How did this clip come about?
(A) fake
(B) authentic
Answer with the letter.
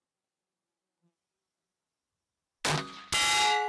B